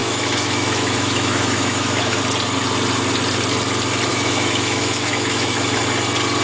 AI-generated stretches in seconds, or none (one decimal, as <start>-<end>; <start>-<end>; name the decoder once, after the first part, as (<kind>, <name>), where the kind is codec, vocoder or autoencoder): 0.0-2.2 (autoencoder, DAC-VAE); 4.1-5.8